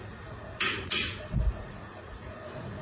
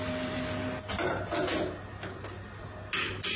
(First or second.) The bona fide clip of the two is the second